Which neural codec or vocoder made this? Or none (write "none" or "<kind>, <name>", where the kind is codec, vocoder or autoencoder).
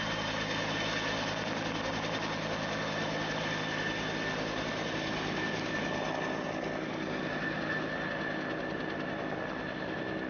none